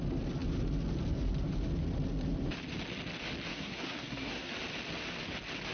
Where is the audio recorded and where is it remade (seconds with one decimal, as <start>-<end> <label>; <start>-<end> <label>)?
0.0-3.5 recorded; 3.5-4.5 remade; 4.5-5.7 recorded